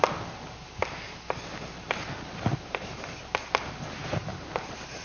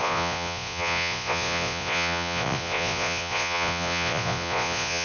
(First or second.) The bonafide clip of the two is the first